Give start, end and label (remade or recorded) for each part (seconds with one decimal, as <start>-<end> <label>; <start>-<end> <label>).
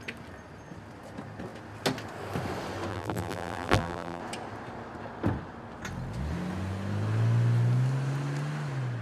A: 0.0-2.9 recorded; 2.9-4.2 remade; 4.2-9.0 recorded